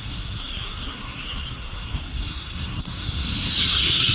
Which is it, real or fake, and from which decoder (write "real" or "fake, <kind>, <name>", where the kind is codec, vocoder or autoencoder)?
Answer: fake, codec, SNAC